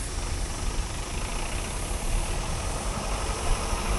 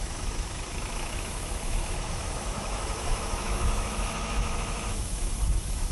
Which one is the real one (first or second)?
first